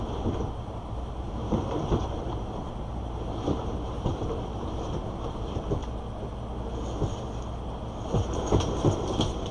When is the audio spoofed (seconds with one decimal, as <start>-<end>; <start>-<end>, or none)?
0.0-5.8; 8.0-9.5